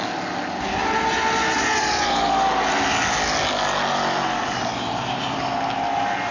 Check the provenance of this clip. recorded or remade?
recorded